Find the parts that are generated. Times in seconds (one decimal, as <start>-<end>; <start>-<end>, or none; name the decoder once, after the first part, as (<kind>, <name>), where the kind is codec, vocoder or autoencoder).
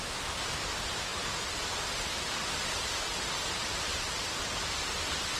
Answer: none